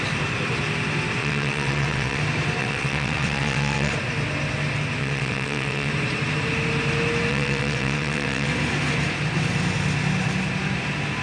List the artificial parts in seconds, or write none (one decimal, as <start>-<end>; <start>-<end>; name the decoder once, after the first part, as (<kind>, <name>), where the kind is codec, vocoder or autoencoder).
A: 1.2-2.2 (vocoder, WaveNeXt); 2.6-3.9; 5.0-5.9; 7.3-8.5